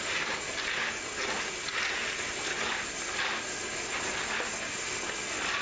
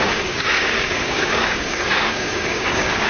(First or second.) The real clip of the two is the first